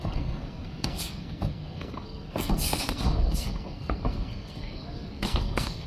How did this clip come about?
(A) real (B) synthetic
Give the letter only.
B